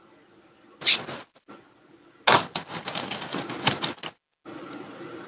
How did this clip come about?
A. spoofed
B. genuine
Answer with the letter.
B